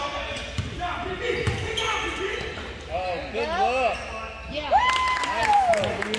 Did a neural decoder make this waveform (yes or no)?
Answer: no